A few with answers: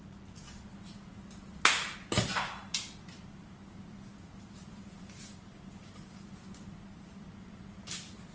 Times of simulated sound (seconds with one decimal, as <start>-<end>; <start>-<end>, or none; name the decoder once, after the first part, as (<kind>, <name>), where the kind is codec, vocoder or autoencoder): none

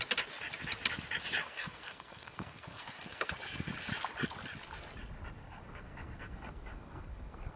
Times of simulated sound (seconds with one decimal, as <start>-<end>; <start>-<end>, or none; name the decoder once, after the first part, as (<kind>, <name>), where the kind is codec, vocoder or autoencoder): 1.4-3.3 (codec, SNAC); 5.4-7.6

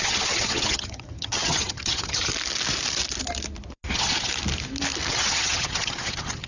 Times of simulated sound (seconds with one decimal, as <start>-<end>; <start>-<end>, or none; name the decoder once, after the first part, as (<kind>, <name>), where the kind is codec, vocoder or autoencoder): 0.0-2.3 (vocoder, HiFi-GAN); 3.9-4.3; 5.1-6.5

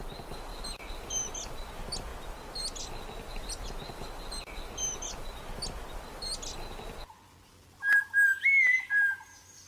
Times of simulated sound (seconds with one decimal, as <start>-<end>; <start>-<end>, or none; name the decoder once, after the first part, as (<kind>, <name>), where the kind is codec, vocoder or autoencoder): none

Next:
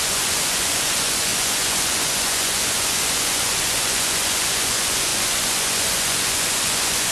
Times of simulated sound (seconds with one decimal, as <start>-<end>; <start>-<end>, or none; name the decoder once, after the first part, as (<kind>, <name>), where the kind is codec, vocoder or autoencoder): 0.0-7.1 (vocoder, Vocos)

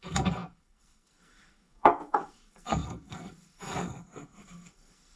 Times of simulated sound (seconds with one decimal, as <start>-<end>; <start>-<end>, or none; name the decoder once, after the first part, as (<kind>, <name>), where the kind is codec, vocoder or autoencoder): 0.0-5.2 (codec, SNAC)